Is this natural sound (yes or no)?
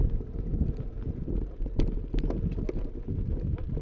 yes